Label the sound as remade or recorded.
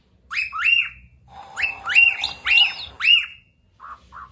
recorded